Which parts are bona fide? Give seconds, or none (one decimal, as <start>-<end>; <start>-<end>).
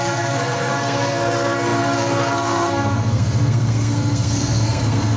none